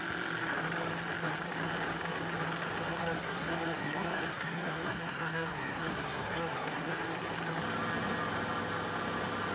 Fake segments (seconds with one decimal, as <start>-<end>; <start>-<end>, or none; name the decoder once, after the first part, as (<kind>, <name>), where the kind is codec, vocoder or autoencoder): 2.9-6.9 (codec, SNAC)